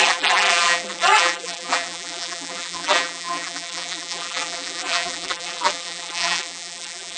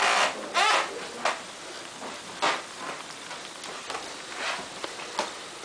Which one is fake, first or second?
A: first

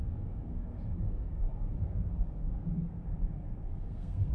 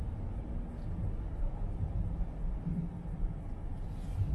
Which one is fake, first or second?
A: first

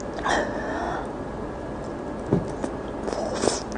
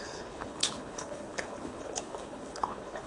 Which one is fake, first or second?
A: second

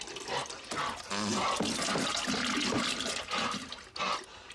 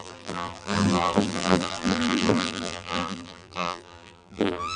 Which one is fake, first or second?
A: second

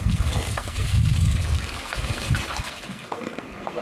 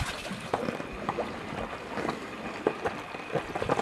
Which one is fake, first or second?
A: first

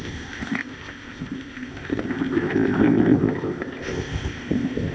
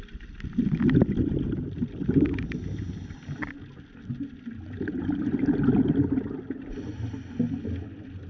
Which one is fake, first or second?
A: first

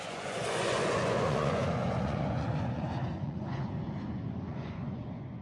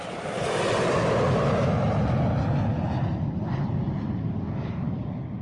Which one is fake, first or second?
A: first